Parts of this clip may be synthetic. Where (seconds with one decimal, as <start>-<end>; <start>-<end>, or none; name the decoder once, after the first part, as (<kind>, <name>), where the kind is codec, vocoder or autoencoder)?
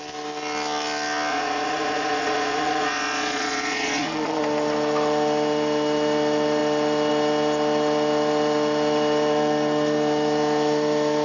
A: 1.3-4.4 (vocoder, Vocos)